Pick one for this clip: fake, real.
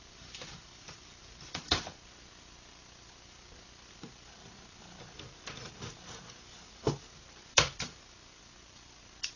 fake